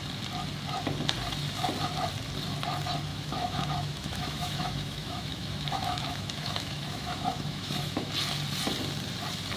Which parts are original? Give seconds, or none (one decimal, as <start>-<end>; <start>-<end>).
0.0-3.1; 8.1-9.6